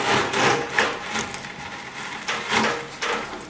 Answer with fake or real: real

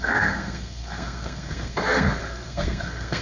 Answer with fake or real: fake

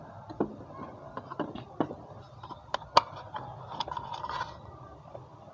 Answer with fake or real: real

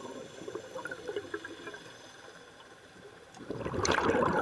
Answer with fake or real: fake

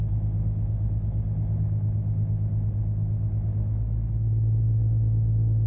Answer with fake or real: real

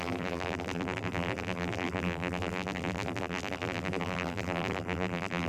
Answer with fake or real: fake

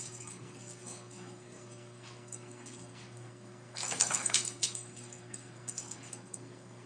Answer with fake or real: fake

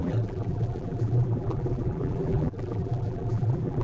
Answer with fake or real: fake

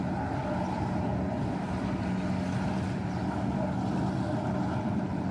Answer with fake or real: real